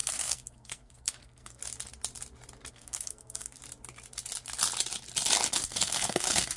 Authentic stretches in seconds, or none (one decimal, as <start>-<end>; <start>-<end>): 1.6-2.7; 3.6-5.5